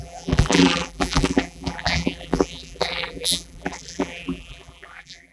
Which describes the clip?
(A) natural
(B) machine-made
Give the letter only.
B